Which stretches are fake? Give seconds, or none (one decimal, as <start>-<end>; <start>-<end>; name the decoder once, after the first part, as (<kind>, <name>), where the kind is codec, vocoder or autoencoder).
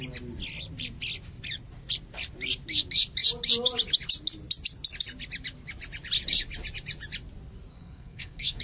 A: 7.7-8.6 (codec, SNAC)